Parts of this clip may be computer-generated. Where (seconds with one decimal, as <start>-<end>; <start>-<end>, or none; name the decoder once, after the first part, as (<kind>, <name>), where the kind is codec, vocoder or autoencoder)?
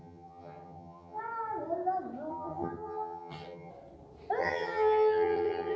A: 0.0-1.2 (vocoder, HiFi-GAN); 2.3-3.7; 4.4-5.8